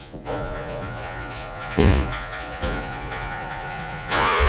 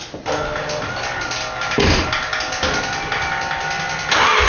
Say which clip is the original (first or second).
second